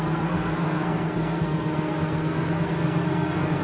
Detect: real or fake fake